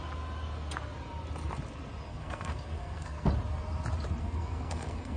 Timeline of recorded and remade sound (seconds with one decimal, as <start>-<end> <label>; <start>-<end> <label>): 0.0-2.1 recorded; 2.1-3.3 remade; 3.3-4.2 recorded; 4.2-5.2 remade